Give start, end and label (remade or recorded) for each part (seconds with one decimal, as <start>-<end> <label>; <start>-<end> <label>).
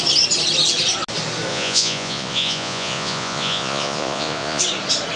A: 0.0-1.5 recorded; 1.5-4.6 remade; 4.6-5.2 recorded